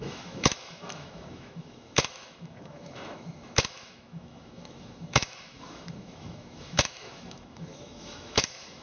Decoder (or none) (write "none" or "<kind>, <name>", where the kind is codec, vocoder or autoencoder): autoencoder, DAC-VAE